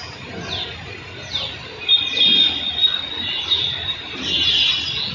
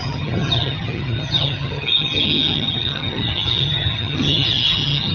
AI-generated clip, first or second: second